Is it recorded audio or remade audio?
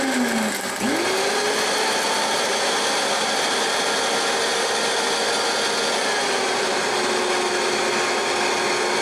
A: recorded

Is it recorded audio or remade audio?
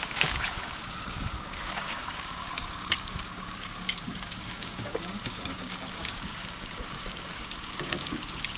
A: remade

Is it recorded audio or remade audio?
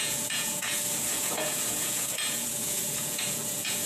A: remade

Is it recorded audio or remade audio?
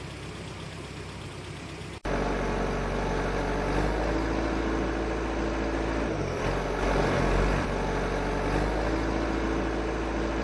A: recorded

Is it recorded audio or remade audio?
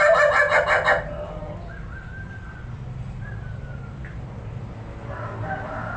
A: recorded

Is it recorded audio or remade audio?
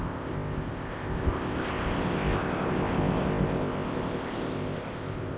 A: remade